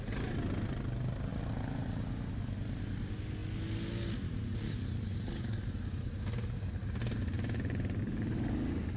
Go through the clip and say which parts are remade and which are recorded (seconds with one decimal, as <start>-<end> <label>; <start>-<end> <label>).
0.0-9.0 recorded